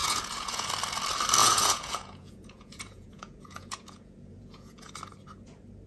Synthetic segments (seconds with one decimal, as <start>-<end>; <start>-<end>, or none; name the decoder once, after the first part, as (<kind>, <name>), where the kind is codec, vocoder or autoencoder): 0.0-0.7 (vocoder, Vocos); 1.4-4.9